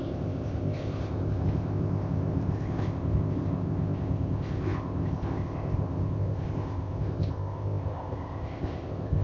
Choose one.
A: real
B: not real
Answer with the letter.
B